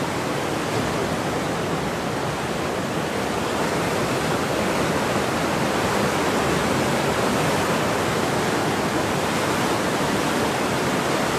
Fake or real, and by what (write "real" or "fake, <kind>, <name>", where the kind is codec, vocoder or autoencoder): real